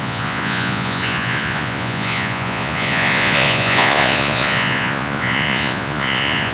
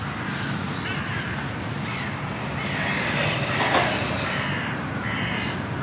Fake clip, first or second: first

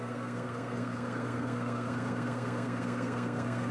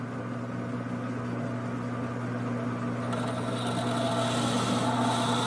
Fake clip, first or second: first